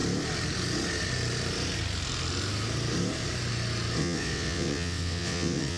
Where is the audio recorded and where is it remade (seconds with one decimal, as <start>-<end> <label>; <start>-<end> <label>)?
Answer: 0.0-4.0 recorded; 4.0-5.8 remade